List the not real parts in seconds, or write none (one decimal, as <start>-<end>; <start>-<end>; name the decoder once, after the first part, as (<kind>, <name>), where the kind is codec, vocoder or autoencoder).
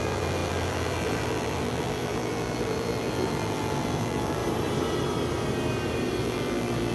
0.0-4.4 (vocoder, BigVGAN v2); 6.2-6.9